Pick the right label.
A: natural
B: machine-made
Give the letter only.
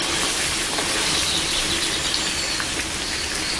A